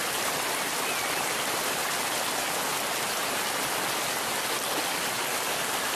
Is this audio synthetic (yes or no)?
no